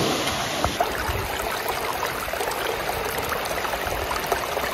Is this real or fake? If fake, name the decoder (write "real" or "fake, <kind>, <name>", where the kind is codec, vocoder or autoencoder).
real